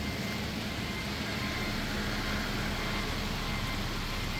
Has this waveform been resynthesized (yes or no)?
no